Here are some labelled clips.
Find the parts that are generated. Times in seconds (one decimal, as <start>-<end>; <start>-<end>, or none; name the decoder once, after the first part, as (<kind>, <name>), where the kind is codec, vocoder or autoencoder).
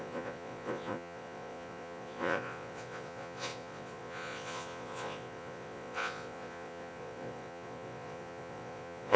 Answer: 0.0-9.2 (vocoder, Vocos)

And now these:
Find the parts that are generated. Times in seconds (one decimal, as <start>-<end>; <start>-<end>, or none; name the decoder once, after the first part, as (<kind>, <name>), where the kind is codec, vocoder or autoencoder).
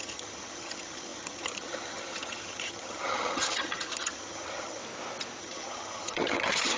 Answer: 0.0-4.8 (vocoder, HiFi-GAN); 5.4-6.8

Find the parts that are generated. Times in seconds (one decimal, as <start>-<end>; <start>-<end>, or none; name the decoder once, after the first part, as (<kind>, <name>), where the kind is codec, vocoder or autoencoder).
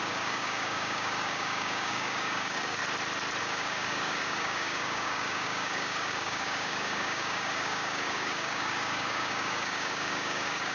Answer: 0.0-2.8 (codec, DAC); 3.4-10.7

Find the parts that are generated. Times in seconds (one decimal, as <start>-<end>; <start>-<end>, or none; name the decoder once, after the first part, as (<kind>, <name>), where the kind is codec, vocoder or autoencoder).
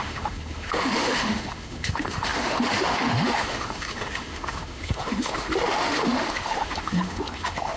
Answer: 0.0-7.8 (autoencoder, DAC-VAE)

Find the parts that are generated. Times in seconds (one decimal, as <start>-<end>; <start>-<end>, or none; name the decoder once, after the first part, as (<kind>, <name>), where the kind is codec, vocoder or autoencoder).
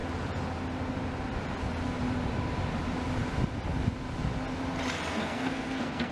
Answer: 5.1-6.1 (codec, SNAC)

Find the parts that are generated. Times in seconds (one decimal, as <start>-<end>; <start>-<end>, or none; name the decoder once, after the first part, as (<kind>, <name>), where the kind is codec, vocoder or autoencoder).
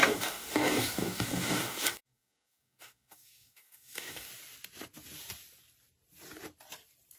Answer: 0.0-4.3 (codec, DAC)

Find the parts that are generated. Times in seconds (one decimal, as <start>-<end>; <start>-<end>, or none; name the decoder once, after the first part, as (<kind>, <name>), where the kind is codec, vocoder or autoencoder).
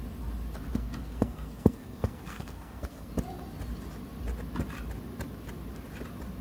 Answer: 0.7-3.1 (codec, SNAC)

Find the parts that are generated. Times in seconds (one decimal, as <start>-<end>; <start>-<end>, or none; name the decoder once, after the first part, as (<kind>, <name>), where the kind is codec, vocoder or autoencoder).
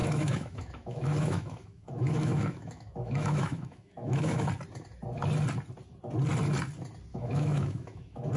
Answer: 0.0-4.5 (autoencoder, DAC-VAE); 7.1-8.4